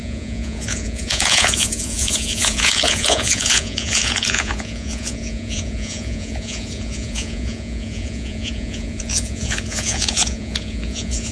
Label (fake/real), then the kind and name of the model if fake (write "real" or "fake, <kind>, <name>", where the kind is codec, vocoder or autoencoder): fake, vocoder, Vocos